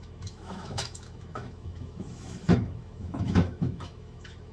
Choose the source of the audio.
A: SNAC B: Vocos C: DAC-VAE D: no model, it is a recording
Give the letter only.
C